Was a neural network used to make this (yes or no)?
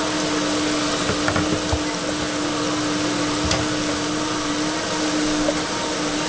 no